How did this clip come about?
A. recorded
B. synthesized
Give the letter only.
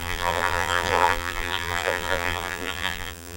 B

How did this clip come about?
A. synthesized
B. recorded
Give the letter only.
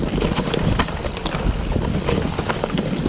B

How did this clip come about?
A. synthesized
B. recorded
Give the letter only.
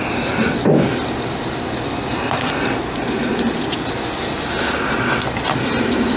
B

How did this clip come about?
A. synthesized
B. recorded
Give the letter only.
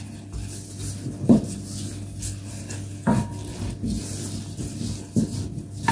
B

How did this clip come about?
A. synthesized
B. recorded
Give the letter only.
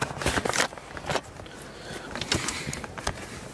B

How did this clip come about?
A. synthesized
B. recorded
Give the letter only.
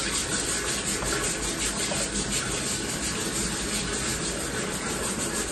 B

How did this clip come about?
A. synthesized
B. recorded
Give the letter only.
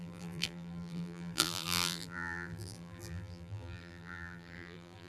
A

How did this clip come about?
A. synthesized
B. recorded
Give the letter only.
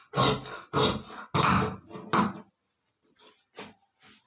B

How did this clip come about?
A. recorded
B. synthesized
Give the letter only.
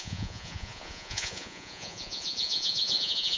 B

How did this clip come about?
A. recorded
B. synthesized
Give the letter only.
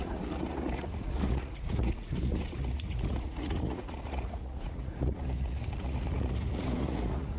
B